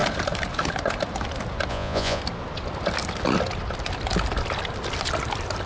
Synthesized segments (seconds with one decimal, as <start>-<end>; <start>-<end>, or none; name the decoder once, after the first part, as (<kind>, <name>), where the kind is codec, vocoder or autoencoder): 1.7-2.2 (vocoder, Vocos)